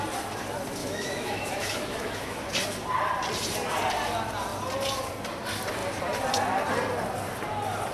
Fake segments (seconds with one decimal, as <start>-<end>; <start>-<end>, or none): 0.8-2.5